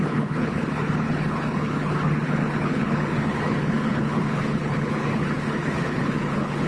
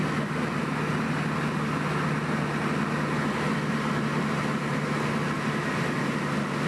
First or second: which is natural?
second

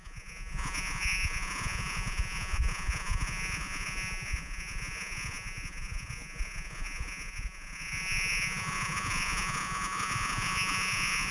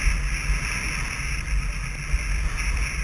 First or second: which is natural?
second